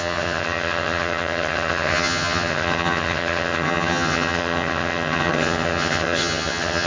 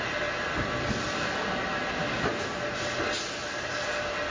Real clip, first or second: second